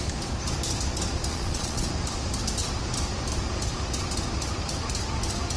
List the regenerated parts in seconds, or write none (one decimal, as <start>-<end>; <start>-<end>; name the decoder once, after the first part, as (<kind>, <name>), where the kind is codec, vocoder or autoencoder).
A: 1.3-1.9 (vocoder, Vocos)

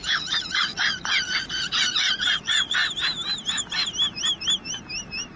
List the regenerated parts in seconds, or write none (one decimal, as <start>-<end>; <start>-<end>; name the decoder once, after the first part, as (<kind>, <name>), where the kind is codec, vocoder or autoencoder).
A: 0.0-2.8 (vocoder, Vocos)